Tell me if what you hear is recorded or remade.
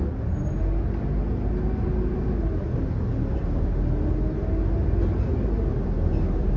recorded